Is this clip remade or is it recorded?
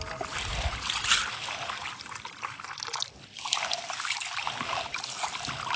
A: recorded